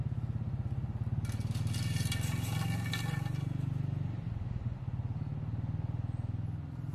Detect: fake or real real